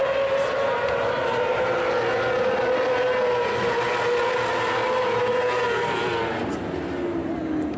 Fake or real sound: real